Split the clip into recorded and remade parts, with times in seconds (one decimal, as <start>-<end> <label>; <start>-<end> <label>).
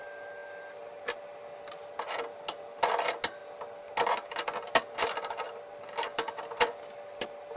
0.0-7.6 recorded